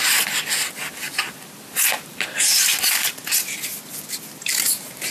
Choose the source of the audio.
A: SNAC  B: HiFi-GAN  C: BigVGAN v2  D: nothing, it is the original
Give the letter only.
D